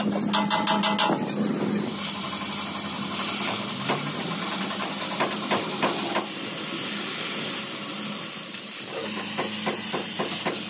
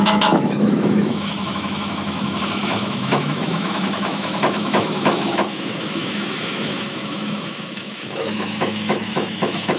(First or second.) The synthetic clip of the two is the second